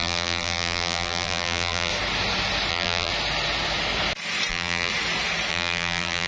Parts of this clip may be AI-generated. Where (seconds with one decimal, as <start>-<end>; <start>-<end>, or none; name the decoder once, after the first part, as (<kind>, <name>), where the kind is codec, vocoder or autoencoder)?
0.0-1.9 (vocoder, BigVGAN v2); 2.7-3.1; 4.5-4.9; 5.5-6.3